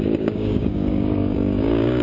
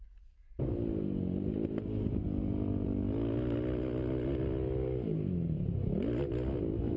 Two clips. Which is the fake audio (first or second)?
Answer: first